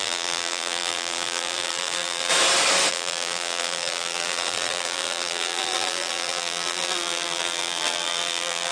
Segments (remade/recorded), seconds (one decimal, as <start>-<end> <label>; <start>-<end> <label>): 0.0-2.3 remade; 2.3-2.9 recorded; 2.9-8.7 remade

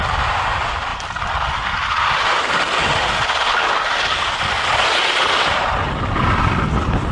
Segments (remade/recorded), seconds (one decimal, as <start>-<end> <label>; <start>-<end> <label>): 0.0-7.1 recorded

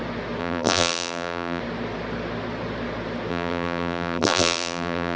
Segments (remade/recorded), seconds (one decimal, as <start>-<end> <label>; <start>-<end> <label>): 0.0-0.4 recorded; 0.4-1.6 remade; 1.6-3.3 recorded; 3.3-5.2 remade

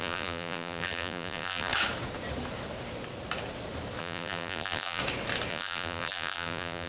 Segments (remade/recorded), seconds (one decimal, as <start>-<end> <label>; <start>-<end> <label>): 0.0-1.7 remade; 1.7-4.0 recorded; 4.0-5.0 remade; 5.0-5.5 recorded; 5.5-6.9 remade